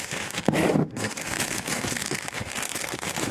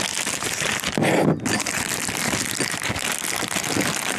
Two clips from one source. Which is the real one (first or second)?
second